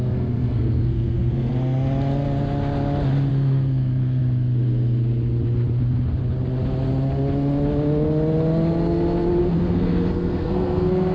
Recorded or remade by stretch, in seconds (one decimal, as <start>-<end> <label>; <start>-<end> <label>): 0.0-1.5 remade; 1.5-3.3 recorded; 3.3-4.2 remade; 4.2-9.4 recorded; 9.4-11.1 remade